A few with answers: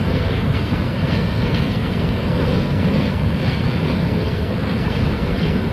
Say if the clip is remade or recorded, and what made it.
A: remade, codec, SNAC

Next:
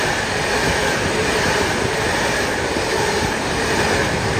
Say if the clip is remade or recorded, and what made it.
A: recorded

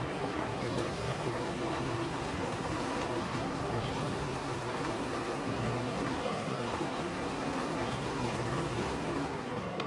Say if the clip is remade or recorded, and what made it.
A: remade, codec, SNAC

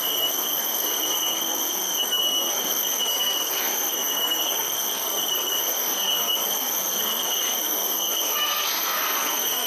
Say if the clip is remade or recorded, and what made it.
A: remade, codec, SNAC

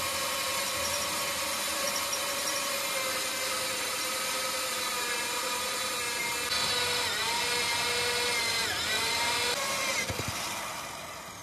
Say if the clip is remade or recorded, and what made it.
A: recorded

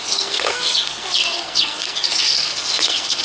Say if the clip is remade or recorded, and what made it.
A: remade, codec, SNAC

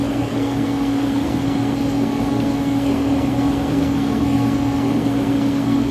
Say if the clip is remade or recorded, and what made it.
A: remade, codec, SNAC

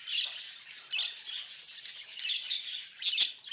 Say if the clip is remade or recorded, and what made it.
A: recorded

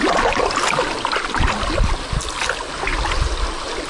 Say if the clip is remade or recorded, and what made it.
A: recorded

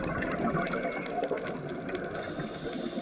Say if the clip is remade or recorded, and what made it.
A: recorded